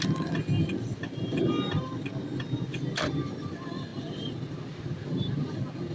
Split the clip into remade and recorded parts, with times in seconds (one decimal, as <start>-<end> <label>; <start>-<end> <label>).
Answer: 0.0-5.9 recorded